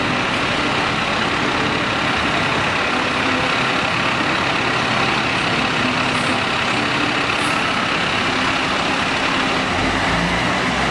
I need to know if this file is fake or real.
real